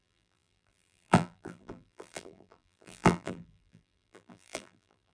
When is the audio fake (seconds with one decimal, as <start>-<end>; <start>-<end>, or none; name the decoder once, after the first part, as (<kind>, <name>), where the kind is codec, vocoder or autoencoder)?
0.0-5.1 (vocoder, BigVGAN v2)